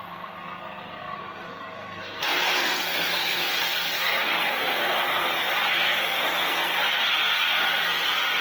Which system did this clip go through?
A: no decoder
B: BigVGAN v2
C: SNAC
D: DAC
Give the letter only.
C